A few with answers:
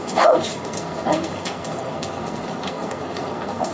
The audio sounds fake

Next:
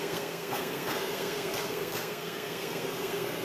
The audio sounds fake